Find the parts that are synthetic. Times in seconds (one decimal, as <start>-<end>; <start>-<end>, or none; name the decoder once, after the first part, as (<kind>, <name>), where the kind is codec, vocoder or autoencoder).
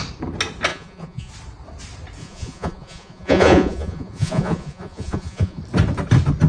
0.7-1.3 (vocoder, Vocos); 2.2-5.6